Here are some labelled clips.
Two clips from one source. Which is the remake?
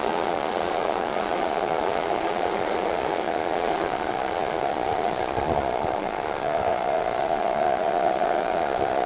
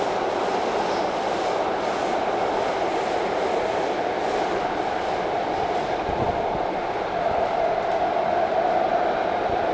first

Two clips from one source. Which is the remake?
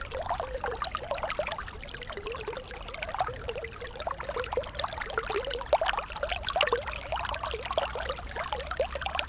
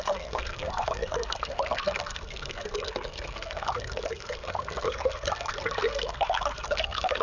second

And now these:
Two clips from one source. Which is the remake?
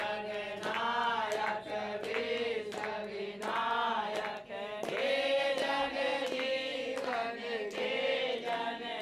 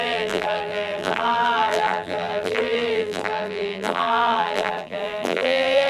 second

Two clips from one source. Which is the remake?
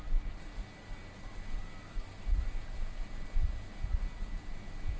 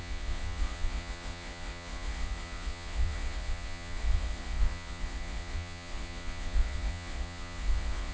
second